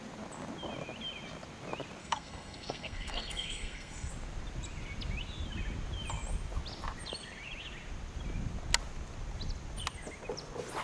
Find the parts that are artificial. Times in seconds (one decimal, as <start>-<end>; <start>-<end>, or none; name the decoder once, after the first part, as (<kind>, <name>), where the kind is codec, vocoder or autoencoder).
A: 2.0-4.1 (codec, SNAC)